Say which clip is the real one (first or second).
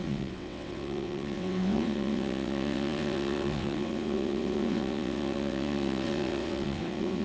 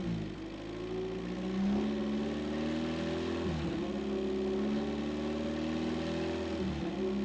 second